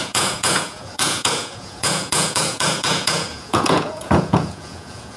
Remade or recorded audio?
remade